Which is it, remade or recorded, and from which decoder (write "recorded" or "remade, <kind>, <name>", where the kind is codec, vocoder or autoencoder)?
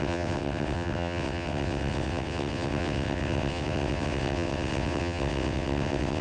remade, vocoder, WaveNeXt